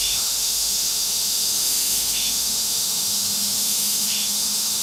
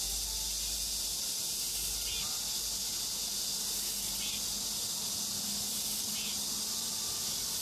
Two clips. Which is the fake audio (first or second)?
first